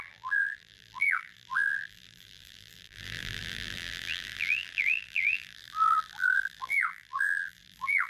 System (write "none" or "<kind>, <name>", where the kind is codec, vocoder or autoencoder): vocoder, BigVGAN v2